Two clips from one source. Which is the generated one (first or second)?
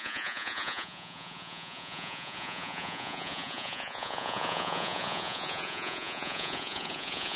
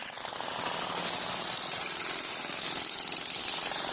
first